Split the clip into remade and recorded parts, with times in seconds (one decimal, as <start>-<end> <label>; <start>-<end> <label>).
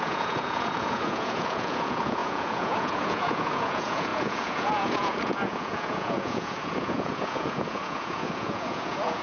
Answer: 0.0-9.2 remade